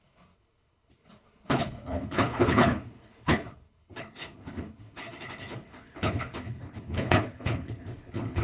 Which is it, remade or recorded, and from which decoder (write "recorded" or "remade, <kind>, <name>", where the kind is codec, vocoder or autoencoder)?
remade, codec, HILCodec